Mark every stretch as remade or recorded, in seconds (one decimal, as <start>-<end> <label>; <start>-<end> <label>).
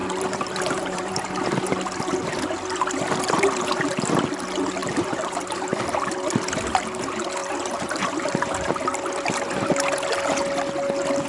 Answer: 0.0-1.1 remade; 1.1-4.8 recorded; 4.8-6.1 remade; 6.1-7.4 recorded; 7.4-8.1 remade; 8.1-11.3 recorded